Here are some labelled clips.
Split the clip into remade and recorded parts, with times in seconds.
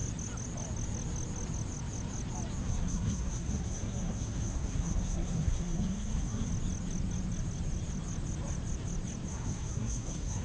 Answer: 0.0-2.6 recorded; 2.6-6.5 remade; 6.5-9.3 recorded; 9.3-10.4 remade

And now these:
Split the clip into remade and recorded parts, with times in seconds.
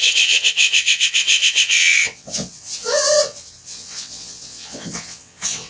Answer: 0.0-5.7 remade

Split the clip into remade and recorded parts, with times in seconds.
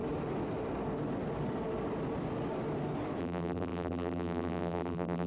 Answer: 0.0-3.2 recorded; 3.2-5.3 remade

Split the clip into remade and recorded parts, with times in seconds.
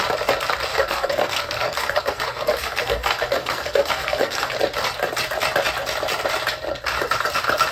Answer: 0.0-0.7 recorded; 0.7-4.5 remade; 4.5-7.7 recorded